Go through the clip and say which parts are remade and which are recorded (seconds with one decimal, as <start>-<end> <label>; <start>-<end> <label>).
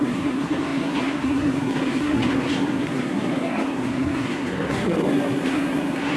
0.0-6.2 remade